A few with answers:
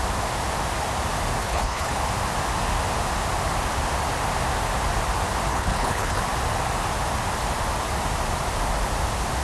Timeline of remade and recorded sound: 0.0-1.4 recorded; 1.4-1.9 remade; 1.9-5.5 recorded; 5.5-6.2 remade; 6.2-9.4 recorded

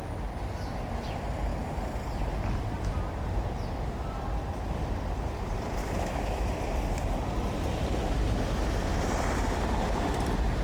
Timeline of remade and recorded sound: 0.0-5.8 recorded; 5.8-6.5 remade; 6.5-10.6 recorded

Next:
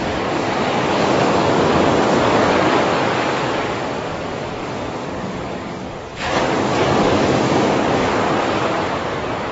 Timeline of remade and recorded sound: 0.0-8.2 remade; 8.2-9.1 recorded; 9.1-9.5 remade

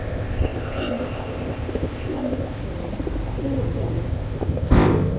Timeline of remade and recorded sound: 0.0-2.6 remade; 2.6-4.1 recorded; 4.1-5.2 remade

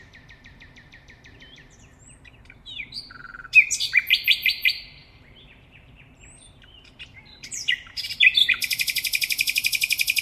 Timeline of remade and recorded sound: 0.0-10.2 remade

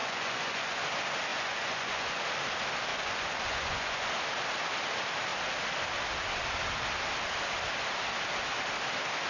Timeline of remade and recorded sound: 0.0-0.8 remade; 0.8-1.3 recorded; 1.3-2.2 remade; 2.2-2.9 recorded; 2.9-4.1 remade; 4.1-9.3 recorded